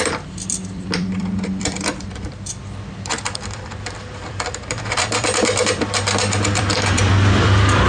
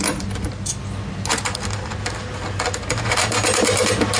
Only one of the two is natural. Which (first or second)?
second